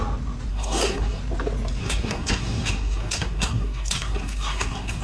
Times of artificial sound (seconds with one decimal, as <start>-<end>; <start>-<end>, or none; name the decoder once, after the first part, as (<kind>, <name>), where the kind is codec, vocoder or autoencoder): 0.5-1.2 (codec, SNAC); 1.8-5.0